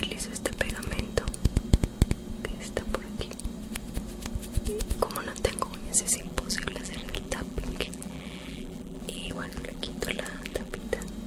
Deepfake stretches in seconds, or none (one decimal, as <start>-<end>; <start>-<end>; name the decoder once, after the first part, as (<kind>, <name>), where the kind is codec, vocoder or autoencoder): 6.2-10.8 (vocoder, BigVGAN v2)